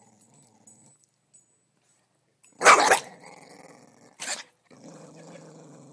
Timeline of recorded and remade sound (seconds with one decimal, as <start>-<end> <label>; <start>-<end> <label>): 0.0-2.3 recorded; 2.3-2.9 remade; 2.9-4.1 recorded; 4.1-5.1 remade; 5.1-5.9 recorded